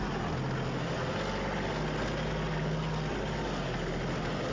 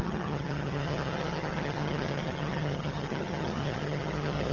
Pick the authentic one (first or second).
first